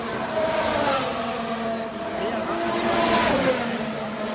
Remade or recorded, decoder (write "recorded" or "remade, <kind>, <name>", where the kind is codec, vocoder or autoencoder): recorded